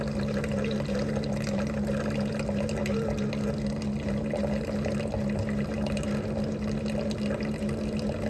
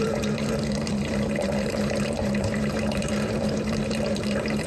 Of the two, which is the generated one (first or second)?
second